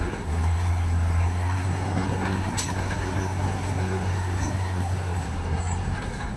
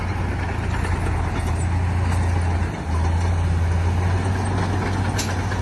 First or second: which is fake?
first